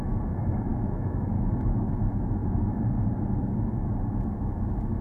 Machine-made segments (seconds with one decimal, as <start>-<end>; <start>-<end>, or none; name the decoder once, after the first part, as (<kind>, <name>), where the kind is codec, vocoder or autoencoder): 0.0-2.4 (autoencoder, DAC-VAE); 4.1-5.0